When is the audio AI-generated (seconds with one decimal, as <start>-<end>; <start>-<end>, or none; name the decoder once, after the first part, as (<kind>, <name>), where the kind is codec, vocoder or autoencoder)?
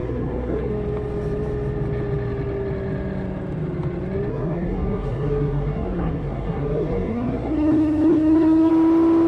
0.0-0.7 (codec, SNAC); 4.3-8.7